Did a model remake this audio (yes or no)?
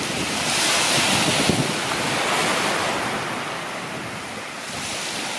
no